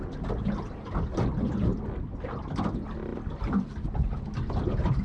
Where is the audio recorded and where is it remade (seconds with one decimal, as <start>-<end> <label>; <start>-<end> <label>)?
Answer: 0.0-5.0 recorded